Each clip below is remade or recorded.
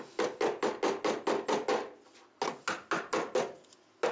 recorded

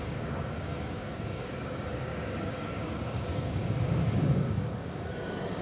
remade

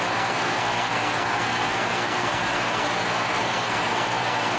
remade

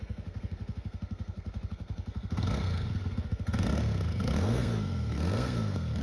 remade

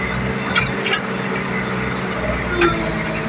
recorded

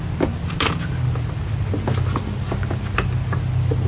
recorded